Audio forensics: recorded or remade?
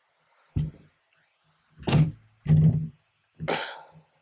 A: recorded